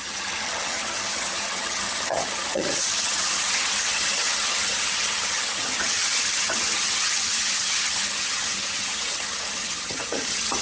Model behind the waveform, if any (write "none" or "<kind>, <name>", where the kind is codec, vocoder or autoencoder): vocoder, HiFi-GAN